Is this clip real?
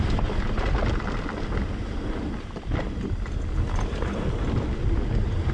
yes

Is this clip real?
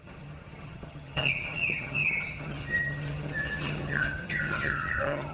no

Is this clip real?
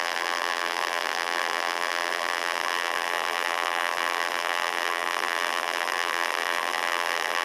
no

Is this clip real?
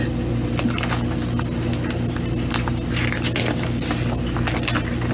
yes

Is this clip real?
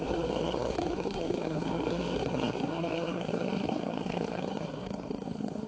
no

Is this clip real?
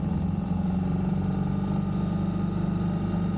yes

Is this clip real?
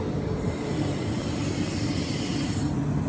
no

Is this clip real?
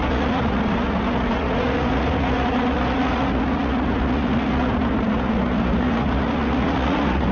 no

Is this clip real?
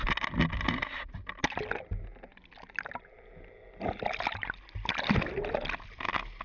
yes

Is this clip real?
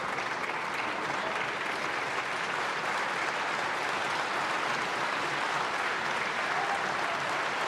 yes